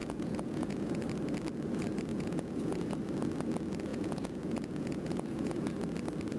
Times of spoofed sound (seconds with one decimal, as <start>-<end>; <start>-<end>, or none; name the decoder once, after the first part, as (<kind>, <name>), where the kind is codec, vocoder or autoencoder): 0.0-1.0 (vocoder, Vocos); 2.1-2.9; 3.9-5.7

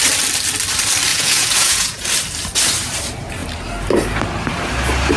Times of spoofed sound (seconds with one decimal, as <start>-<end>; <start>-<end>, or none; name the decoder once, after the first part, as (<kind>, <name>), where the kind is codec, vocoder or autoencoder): 1.1-2.1 (vocoder, Vocos)

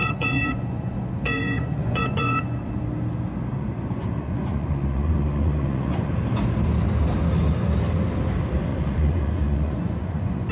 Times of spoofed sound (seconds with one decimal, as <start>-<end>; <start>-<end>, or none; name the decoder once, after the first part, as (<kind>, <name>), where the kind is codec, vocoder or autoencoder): 0.0-2.6 (vocoder, Vocos); 3.5-6.1; 8.7-10.5